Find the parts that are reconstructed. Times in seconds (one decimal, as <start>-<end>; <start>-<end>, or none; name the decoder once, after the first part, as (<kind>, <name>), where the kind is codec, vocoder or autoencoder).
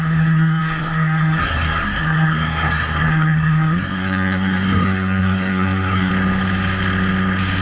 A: 0.0-6.1 (codec, SNAC)